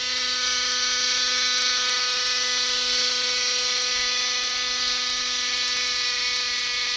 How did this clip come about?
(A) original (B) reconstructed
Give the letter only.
A